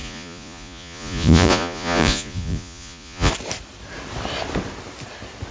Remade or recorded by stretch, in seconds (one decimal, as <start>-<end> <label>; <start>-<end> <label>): 0.0-3.3 remade; 3.3-5.5 recorded